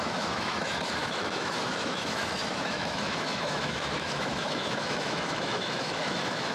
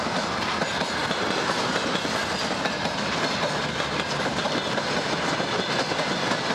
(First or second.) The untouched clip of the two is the second